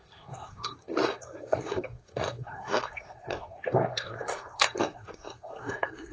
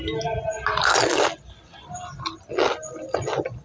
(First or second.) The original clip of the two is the second